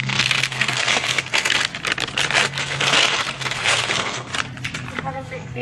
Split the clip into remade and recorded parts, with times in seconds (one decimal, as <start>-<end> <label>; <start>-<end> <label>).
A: 0.0-1.7 remade; 1.7-2.4 recorded; 2.4-4.3 remade; 4.3-5.1 recorded; 5.1-5.6 remade